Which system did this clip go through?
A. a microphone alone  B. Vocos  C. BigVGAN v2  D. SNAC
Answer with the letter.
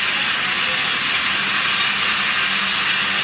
A